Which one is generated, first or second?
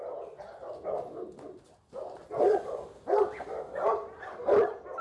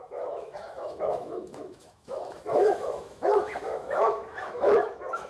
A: second